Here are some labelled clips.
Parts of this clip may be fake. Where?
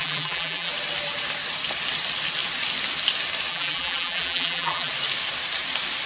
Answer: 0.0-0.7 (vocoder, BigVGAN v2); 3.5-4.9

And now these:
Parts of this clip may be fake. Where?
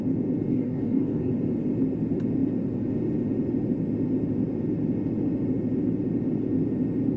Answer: 0.5-1.3 (codec, DAC)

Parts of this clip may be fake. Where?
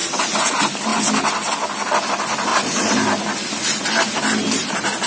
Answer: 2.5-3.2 (vocoder, BigVGAN v2); 4.4-5.1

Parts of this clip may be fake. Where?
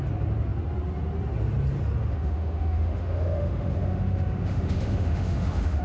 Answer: 2.0-5.8 (autoencoder, DAC-VAE)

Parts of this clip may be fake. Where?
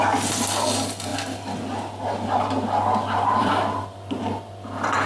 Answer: 1.1-4.2 (vocoder, BigVGAN v2)